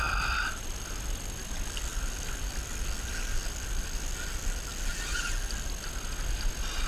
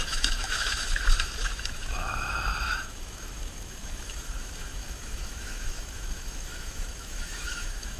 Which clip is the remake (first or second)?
second